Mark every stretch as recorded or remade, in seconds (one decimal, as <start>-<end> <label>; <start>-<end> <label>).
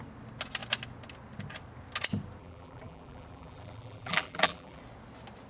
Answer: 0.0-2.4 recorded; 2.4-4.8 remade; 4.8-5.5 recorded